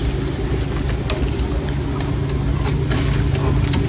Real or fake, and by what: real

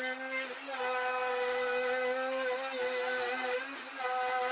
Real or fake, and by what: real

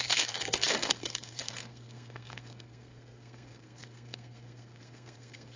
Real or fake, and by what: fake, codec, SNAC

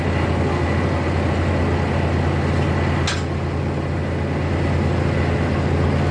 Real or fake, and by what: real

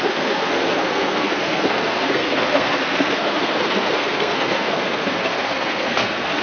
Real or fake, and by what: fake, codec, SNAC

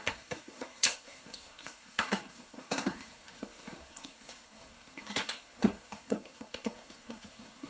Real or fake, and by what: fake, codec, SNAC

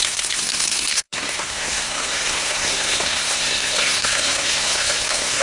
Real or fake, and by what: fake, codec, SNAC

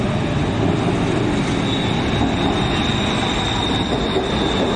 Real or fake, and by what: real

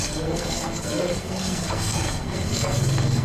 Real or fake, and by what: fake, codec, SNAC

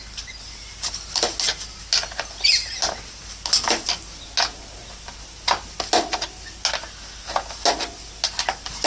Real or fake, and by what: real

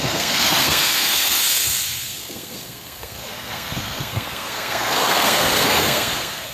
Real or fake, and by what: fake, codec, SNAC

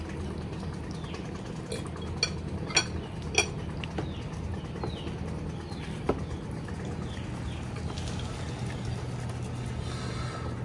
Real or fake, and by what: real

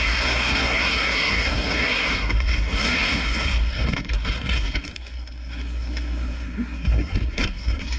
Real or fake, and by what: fake, codec, SNAC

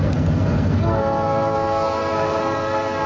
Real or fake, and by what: fake, codec, SNAC